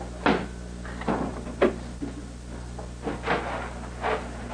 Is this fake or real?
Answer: real